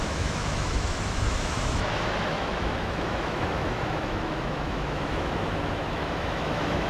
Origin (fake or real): fake